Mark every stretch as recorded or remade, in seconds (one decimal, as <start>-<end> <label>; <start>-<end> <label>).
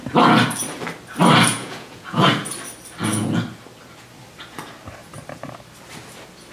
0.0-1.5 recorded; 1.5-2.3 remade; 2.3-6.5 recorded